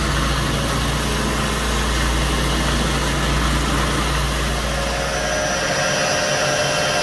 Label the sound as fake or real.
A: real